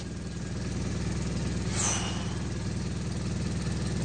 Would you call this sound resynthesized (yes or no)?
no